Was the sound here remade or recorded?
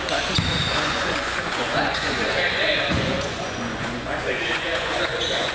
remade